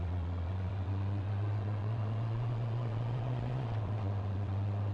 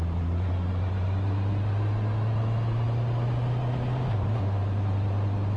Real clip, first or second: second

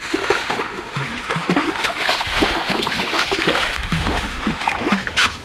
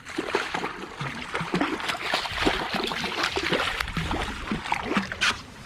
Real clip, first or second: second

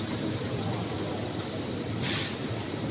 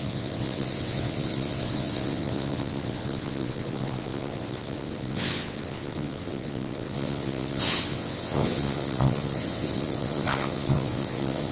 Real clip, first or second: first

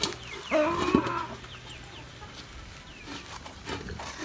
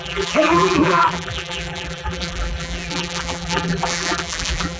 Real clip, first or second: first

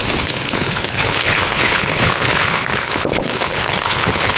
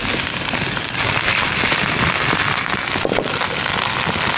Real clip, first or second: second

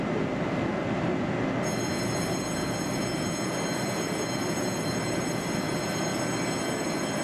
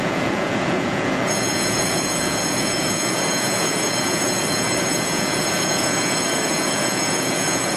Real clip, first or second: first